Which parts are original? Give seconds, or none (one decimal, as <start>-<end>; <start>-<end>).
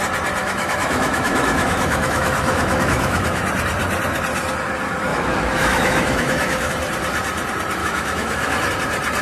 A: 0.0-0.4; 3.4-5.1; 6.7-7.8; 8.7-9.2